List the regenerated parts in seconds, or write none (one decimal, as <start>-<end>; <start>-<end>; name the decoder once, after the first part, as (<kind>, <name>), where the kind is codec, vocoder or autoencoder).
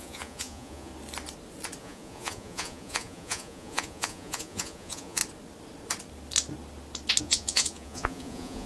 0.0-0.9 (vocoder, Vocos); 1.8-5.2; 7.2-8.7